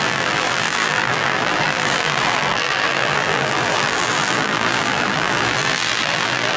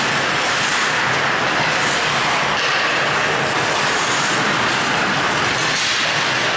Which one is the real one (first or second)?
second